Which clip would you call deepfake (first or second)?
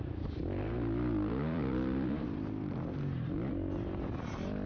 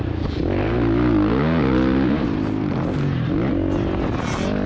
first